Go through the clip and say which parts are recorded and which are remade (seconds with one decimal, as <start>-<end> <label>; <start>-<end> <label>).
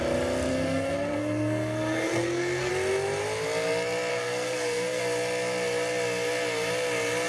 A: 0.0-0.5 recorded; 0.5-2.7 remade; 2.7-4.1 recorded; 4.1-5.0 remade; 5.0-7.3 recorded